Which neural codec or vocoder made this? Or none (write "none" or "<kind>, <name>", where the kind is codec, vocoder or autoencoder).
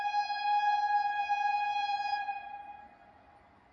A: none